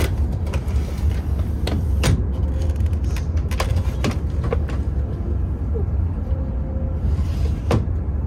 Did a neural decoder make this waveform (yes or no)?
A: no